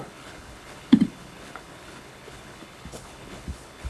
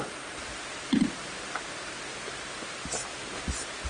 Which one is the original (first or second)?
second